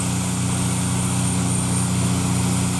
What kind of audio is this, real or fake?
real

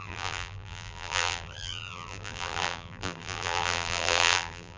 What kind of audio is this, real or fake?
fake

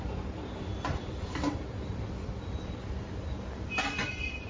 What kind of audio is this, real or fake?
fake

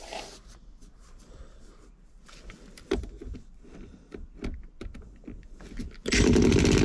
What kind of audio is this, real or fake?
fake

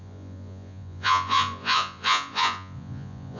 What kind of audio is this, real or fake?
fake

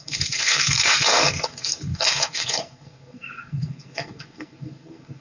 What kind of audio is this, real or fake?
fake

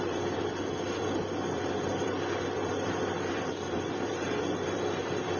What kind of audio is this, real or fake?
fake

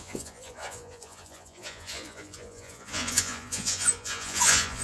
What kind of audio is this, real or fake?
fake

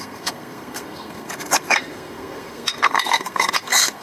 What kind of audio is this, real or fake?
fake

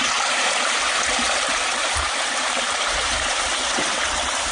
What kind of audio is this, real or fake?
fake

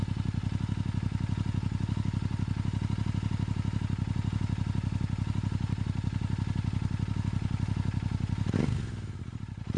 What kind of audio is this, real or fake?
real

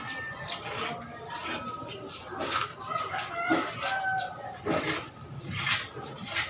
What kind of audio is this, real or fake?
real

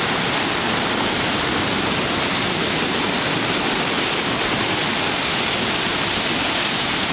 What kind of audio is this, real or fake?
real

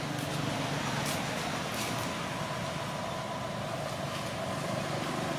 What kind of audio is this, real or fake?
real